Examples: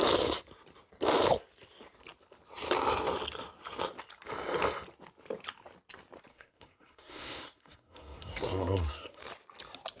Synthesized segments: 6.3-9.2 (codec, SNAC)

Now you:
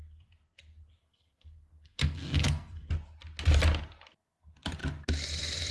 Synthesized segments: 1.0-2.9 (codec, SNAC)

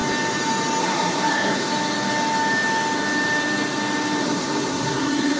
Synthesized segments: 0.8-1.7 (codec, SNAC); 4.2-5.4

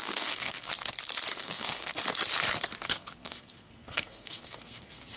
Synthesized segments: 0.0-0.7 (codec, SNAC); 1.3-1.9; 2.8-5.2

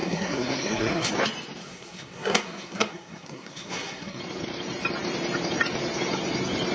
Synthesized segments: 0.0-1.1 (codec, SNAC); 1.6-4.2